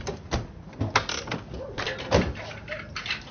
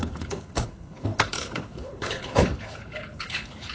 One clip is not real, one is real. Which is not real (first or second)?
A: second